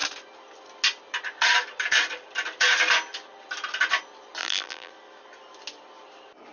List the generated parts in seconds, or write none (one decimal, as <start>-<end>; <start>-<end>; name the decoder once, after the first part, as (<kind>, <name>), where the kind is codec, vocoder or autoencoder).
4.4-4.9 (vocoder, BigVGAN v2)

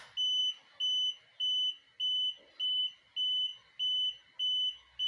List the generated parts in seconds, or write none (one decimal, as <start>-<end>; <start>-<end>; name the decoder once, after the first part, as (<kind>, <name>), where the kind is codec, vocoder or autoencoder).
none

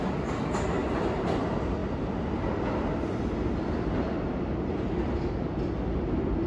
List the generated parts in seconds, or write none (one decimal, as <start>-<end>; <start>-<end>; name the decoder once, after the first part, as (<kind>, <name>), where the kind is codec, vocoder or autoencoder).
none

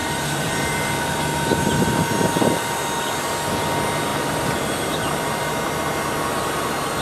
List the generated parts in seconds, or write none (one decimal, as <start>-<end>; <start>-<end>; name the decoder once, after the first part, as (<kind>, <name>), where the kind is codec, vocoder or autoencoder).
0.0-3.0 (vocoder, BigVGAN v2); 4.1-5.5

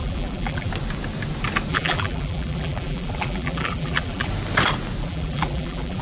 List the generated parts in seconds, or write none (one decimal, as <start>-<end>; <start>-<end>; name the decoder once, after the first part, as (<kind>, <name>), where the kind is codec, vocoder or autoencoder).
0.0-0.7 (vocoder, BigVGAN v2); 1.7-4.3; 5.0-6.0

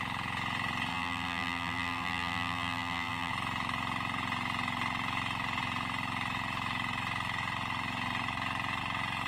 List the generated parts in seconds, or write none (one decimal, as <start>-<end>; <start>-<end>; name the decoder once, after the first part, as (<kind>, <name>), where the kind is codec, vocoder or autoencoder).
0.9-3.3 (vocoder, BigVGAN v2)